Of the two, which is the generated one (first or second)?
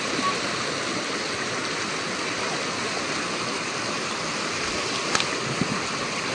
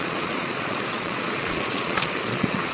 second